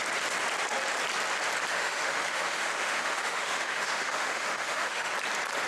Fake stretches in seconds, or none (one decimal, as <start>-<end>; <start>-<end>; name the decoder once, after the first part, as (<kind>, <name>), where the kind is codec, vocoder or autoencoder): 1.7-5.1 (autoencoder, DAC-VAE)